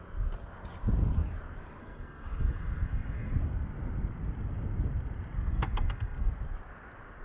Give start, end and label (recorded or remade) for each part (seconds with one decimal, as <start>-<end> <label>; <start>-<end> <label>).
0.0-1.8 recorded; 1.8-3.3 remade; 3.3-5.5 recorded; 5.5-6.3 remade; 6.3-7.2 recorded